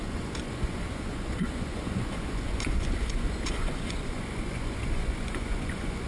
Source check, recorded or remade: remade